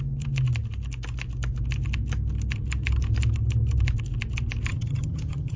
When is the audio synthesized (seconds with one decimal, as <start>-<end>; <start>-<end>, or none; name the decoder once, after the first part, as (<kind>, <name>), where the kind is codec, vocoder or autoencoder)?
4.7-5.6 (vocoder, HiFi-GAN)

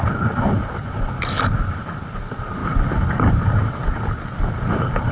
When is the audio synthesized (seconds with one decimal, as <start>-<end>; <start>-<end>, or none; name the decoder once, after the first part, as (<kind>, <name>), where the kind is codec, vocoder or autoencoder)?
none